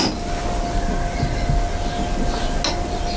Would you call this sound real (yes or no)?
yes